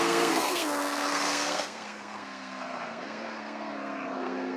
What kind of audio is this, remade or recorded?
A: remade